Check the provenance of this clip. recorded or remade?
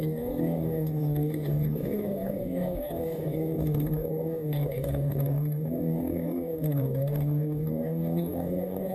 remade